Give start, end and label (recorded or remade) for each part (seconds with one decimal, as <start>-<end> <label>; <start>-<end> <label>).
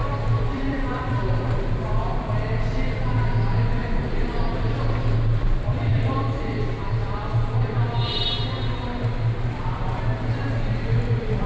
0.0-2.3 remade; 2.3-3.8 recorded; 3.8-6.4 remade; 6.4-11.5 recorded